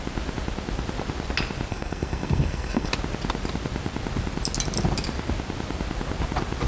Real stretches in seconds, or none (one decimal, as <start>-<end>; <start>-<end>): 0.0-1.7; 2.9-6.7

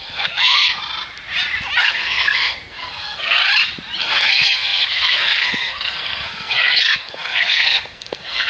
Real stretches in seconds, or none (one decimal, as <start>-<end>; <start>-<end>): 0.8-1.8; 3.4-4.0

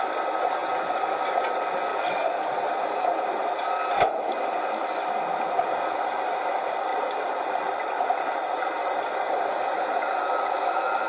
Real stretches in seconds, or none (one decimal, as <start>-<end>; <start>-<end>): 0.0-6.9; 10.6-11.1

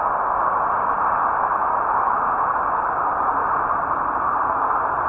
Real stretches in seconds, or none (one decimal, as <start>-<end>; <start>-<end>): 0.0-1.5; 4.6-5.1

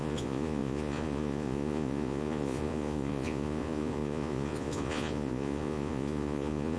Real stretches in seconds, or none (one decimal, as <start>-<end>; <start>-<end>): none